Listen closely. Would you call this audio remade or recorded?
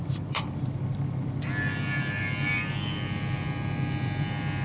remade